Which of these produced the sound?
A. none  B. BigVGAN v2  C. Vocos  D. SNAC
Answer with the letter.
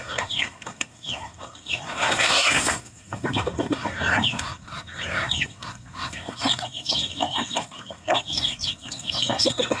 D